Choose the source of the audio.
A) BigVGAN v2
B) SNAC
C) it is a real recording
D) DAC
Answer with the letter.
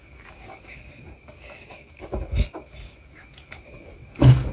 D